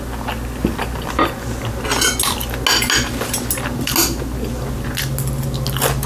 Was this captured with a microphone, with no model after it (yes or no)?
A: yes